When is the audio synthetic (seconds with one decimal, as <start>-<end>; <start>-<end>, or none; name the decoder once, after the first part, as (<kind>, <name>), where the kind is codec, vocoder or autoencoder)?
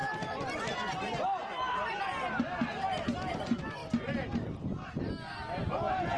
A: 0.0-0.6 (vocoder, BigVGAN v2); 1.4-2.0